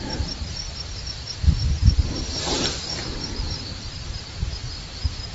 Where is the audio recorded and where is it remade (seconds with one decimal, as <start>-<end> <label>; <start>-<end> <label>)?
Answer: 0.0-1.8 recorded; 1.8-5.3 remade